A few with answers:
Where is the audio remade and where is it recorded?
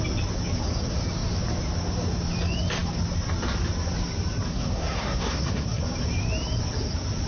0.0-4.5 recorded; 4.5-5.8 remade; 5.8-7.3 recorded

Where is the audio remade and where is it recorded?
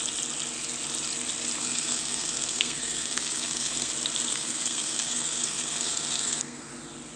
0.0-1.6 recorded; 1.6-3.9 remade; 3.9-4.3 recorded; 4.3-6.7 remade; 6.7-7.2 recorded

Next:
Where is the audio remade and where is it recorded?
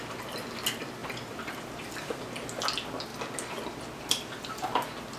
0.0-5.2 recorded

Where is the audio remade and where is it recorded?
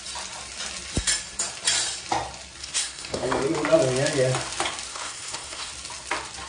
0.0-2.6 recorded; 2.6-3.4 remade; 3.4-4.9 recorded; 4.9-5.7 remade; 5.7-6.5 recorded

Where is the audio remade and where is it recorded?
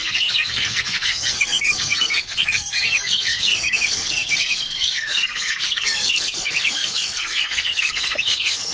0.0-8.7 remade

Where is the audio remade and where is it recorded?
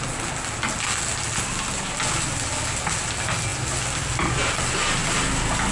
0.0-5.7 recorded